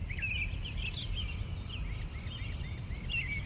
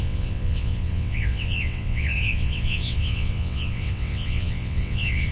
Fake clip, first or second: second